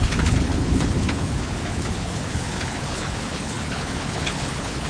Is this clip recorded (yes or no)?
no